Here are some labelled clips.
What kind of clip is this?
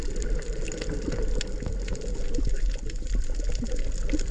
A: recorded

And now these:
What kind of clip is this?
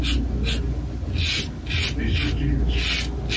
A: recorded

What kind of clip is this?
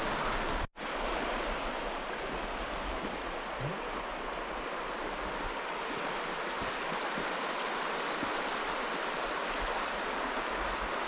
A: recorded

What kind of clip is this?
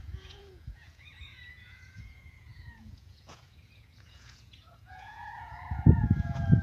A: remade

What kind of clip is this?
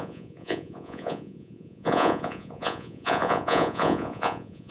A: remade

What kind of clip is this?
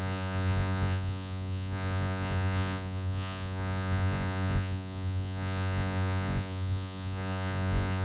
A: remade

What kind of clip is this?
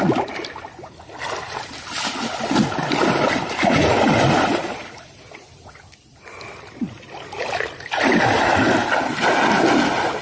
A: recorded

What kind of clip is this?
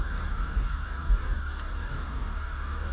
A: remade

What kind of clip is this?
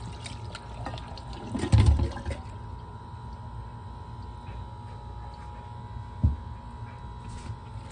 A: recorded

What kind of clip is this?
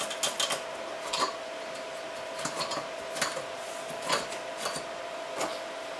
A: recorded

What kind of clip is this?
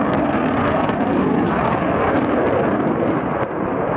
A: recorded